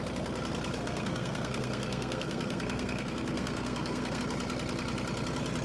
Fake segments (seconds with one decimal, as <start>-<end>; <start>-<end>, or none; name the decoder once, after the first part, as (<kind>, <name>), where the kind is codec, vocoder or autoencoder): 0.8-4.2 (codec, SNAC)